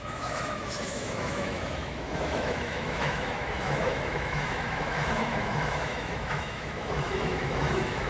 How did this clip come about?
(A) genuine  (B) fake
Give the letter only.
B